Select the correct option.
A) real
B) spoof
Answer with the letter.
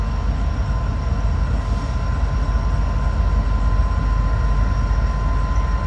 A